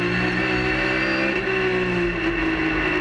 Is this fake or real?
real